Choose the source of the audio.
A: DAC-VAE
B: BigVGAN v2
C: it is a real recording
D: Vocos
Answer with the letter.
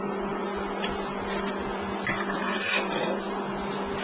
C